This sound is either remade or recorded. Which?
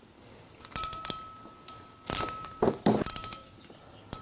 recorded